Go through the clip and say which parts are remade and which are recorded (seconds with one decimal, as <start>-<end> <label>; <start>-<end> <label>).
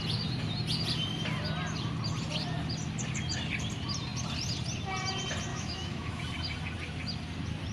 0.0-5.5 recorded; 5.5-6.2 remade; 6.2-7.7 recorded